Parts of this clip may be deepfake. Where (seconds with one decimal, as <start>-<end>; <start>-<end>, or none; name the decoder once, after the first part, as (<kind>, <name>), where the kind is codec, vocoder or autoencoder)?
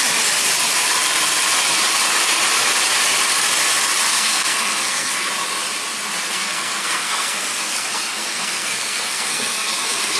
4.1-5.3 (codec, SNAC); 6.3-10.2